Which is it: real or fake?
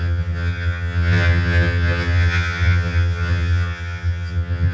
fake